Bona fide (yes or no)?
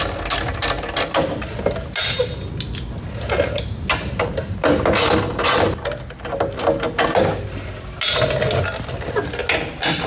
yes